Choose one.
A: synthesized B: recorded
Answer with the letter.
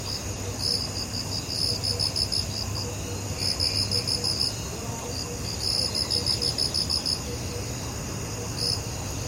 B